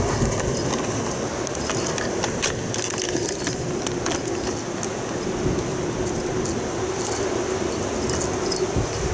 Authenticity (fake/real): real